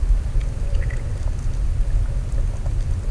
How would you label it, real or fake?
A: real